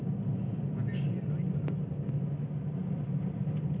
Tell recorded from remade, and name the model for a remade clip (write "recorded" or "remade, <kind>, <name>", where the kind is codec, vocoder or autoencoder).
recorded